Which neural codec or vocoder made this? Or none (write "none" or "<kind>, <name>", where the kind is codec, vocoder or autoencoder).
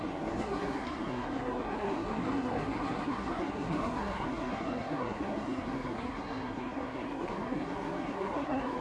codec, SNAC